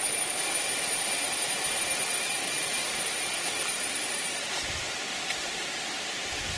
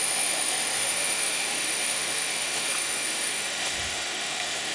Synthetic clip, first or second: second